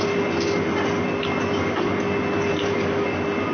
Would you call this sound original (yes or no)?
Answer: yes